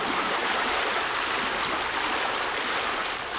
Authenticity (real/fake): real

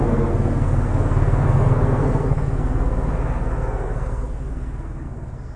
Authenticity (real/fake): fake